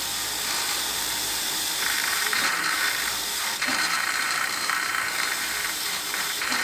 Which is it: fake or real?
fake